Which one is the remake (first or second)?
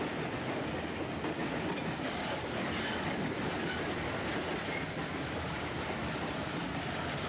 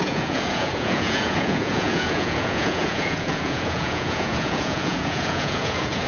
second